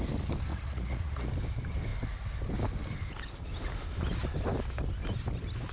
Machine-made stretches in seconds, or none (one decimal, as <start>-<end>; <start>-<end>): 0.5-1.3